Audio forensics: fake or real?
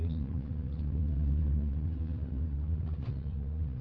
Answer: fake